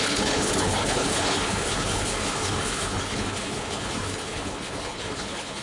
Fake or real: fake